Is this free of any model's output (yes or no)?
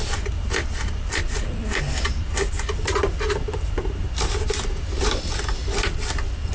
yes